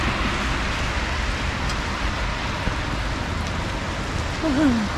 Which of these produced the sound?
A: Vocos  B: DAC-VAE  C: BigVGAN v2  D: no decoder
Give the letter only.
D